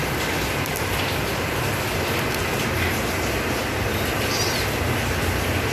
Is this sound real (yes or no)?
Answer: yes